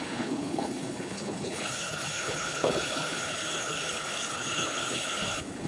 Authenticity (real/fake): fake